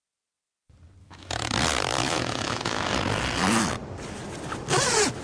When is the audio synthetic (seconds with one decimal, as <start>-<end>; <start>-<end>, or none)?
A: 1.0-1.5; 2.0-2.9